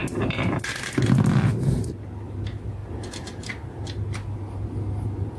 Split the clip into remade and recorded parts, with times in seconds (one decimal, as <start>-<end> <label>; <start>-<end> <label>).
0.0-5.4 recorded